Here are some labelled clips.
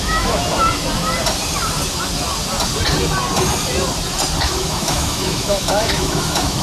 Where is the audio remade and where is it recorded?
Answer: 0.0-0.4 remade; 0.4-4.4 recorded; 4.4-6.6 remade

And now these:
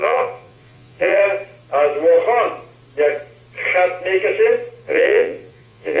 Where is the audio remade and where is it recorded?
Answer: 0.0-1.2 remade; 1.2-4.8 recorded; 4.8-6.0 remade

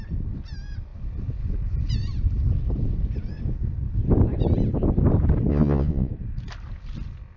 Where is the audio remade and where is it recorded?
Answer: 0.0-5.5 recorded; 5.5-6.1 remade; 6.1-7.4 recorded